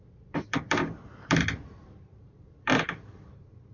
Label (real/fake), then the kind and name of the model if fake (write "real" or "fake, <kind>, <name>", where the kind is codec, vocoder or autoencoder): fake, vocoder, BigVGAN v2